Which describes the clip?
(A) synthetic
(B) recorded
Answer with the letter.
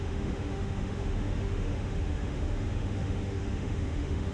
A